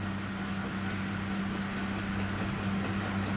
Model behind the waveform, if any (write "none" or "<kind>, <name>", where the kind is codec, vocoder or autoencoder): none